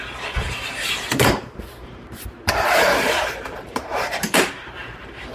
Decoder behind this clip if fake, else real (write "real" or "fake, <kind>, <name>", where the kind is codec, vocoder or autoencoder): fake, vocoder, BigVGAN v2